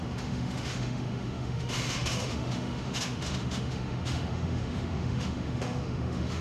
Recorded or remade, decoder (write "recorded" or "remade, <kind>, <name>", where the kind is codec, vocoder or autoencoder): remade, autoencoder, DAC-VAE